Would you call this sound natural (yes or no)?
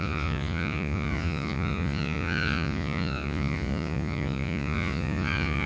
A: no